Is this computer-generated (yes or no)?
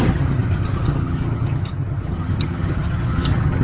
yes